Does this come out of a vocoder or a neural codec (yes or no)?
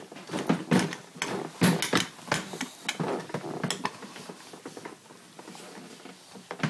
no